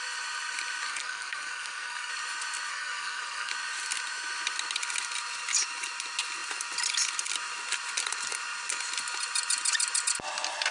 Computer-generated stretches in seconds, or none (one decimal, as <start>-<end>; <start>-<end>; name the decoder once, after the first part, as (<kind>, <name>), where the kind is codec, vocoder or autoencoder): 0.9-2.1 (codec, SNAC); 2.7-3.5